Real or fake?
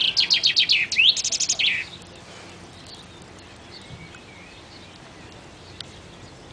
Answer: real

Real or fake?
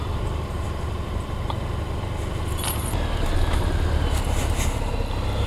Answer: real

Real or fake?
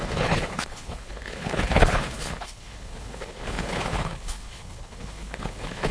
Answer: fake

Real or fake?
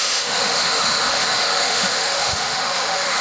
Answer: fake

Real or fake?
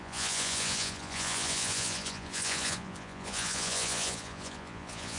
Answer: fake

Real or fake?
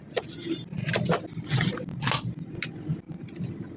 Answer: real